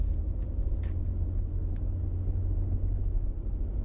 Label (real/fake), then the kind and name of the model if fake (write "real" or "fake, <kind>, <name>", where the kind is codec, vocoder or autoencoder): real